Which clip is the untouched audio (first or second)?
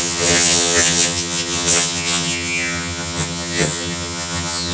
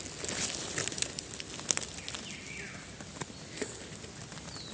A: second